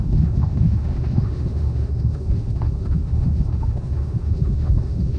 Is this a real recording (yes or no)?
no